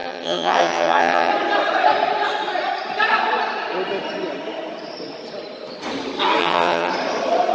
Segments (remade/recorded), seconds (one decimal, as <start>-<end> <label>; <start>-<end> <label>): 0.0-1.3 remade; 1.3-6.4 recorded; 6.4-6.9 remade; 6.9-7.5 recorded

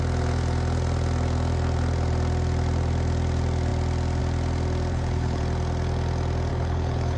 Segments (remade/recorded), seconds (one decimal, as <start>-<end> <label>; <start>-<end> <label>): 0.0-4.9 recorded; 4.9-5.4 remade; 5.4-6.5 recorded; 6.5-7.2 remade